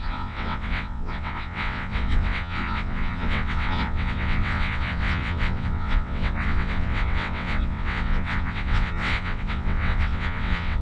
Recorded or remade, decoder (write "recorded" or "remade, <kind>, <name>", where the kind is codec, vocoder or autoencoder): remade, vocoder, WaveNeXt